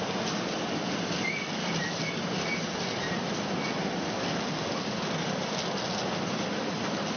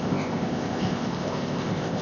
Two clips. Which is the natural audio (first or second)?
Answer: first